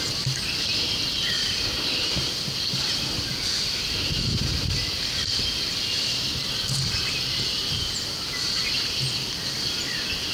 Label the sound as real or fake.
real